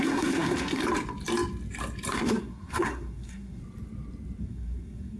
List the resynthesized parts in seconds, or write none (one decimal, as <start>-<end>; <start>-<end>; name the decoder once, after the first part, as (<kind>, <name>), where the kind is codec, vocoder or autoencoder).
0.0-0.8 (codec, SNAC); 2.1-3.6; 4.4-5.2